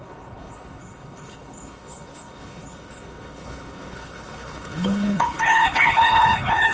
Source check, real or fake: fake